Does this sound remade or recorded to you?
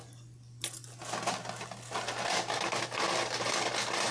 recorded